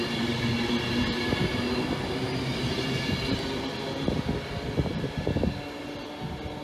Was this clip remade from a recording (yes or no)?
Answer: no